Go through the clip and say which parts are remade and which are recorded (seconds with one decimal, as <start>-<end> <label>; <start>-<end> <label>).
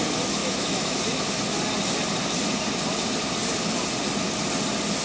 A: 0.0-0.4 recorded; 0.4-1.0 remade; 1.0-5.0 recorded